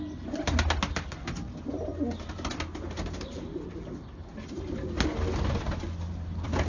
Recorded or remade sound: recorded